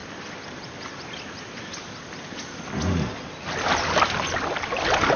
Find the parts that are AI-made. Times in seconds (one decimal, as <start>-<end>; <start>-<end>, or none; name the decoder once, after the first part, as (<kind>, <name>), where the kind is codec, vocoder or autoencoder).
none